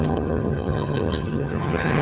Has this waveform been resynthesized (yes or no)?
yes